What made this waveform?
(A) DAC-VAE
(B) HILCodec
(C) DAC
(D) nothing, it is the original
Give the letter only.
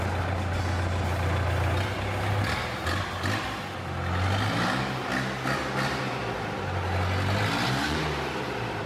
D